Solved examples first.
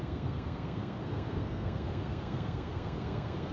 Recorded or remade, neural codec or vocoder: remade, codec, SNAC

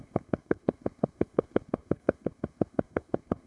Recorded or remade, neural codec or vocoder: remade, codec, SNAC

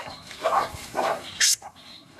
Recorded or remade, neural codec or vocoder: remade, codec, SNAC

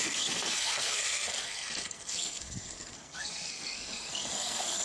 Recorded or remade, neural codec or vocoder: remade, codec, SNAC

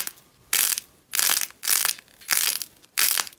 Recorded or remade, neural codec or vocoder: recorded